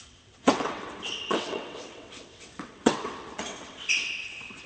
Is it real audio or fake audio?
fake